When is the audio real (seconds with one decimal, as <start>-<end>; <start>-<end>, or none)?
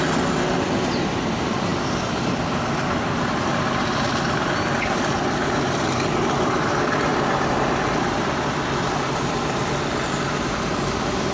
0.0-11.3